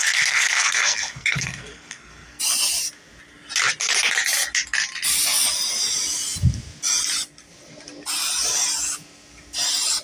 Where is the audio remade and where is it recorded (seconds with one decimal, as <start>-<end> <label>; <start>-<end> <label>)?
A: 0.0-2.4 remade; 2.4-10.0 recorded